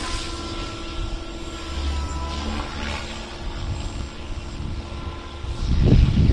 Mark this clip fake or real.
real